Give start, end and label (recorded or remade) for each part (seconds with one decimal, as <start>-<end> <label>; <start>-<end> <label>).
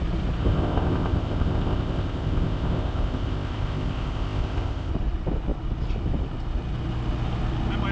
0.0-0.4 recorded; 0.4-4.9 remade; 4.9-7.9 recorded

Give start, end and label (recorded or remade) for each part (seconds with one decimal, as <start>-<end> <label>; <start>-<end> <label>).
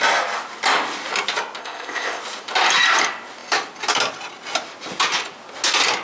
0.0-1.6 recorded; 1.6-2.2 remade; 2.2-6.0 recorded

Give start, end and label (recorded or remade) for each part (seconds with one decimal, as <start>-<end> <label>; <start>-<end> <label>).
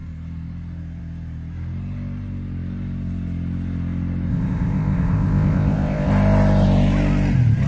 0.0-4.3 recorded; 4.3-6.1 remade; 6.1-7.7 recorded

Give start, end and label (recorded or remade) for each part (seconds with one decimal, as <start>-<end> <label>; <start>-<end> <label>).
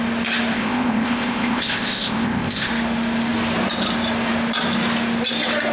0.0-0.5 recorded; 0.5-2.7 remade; 2.7-5.7 recorded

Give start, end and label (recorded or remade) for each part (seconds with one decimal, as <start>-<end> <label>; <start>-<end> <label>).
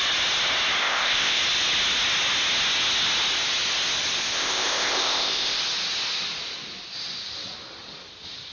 0.0-0.8 recorded; 0.8-1.4 remade; 1.4-4.2 recorded; 4.2-5.6 remade; 5.6-8.5 recorded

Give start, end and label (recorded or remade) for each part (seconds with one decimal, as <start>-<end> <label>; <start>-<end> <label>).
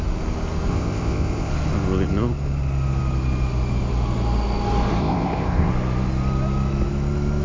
0.0-0.7 recorded; 0.7-1.5 remade; 1.5-5.0 recorded; 5.0-5.7 remade; 5.7-7.4 recorded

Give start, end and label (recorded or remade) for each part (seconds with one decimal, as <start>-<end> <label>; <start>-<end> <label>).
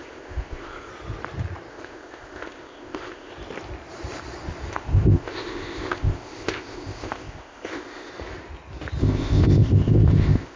0.0-0.9 remade; 0.9-1.7 recorded; 1.7-3.3 remade; 3.3-4.7 recorded; 4.7-8.1 remade; 8.1-9.0 recorded; 9.0-10.6 remade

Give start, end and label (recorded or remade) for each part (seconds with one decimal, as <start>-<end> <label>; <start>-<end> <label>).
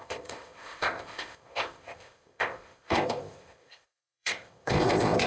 0.0-5.3 remade